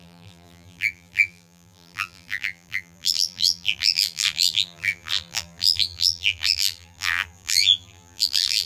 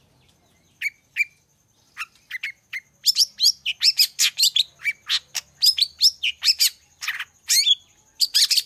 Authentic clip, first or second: second